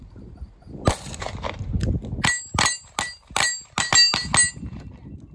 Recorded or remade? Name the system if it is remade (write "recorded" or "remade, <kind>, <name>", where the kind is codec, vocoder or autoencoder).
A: recorded